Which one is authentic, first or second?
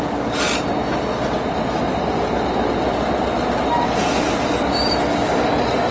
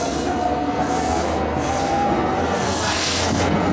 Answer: first